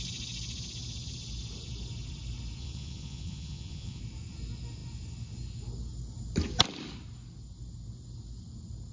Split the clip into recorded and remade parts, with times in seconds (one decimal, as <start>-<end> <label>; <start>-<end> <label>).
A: 0.0-2.6 recorded; 2.6-4.0 remade; 4.0-8.9 recorded